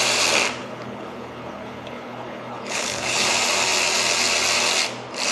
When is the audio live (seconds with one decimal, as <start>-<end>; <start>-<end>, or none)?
0.0-0.6; 3.3-5.3